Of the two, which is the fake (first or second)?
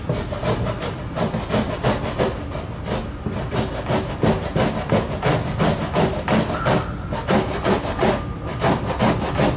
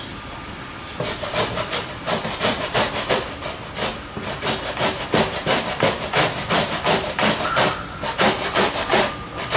second